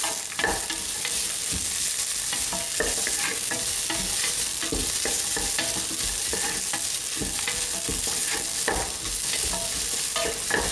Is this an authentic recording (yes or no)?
yes